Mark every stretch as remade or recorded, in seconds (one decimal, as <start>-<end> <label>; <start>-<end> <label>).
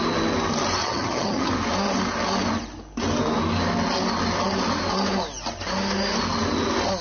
0.0-0.8 recorded; 0.8-1.5 remade; 1.5-7.0 recorded